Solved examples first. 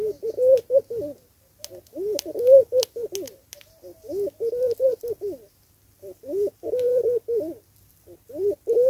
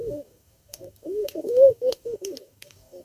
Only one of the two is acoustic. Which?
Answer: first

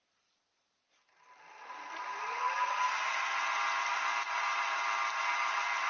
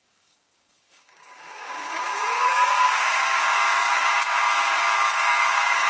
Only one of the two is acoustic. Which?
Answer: first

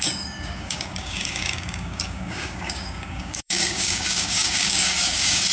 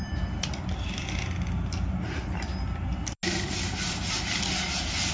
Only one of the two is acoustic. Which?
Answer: second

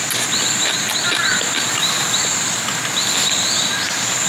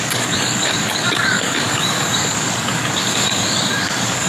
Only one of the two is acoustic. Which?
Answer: first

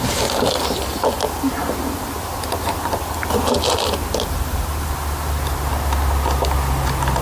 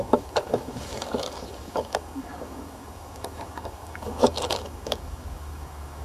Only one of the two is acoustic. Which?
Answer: first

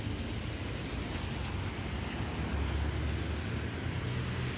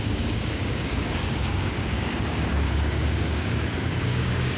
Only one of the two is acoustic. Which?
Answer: first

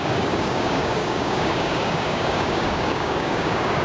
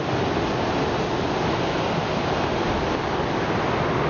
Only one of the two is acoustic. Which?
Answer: second